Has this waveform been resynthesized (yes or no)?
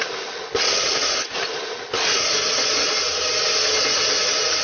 no